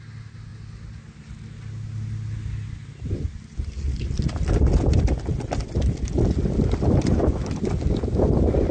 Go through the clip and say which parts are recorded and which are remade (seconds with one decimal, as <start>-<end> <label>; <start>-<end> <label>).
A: 0.0-8.7 recorded